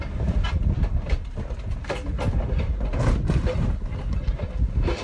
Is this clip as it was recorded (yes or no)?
yes